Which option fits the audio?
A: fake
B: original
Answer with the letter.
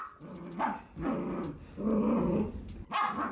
B